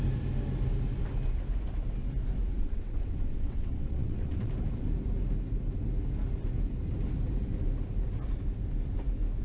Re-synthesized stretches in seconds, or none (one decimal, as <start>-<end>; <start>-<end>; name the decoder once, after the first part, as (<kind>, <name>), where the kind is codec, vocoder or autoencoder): 2.6-4.5 (vocoder, WaveNeXt)